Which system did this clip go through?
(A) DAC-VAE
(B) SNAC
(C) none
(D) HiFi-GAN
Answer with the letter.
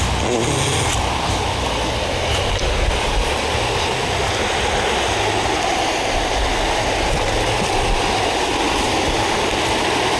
C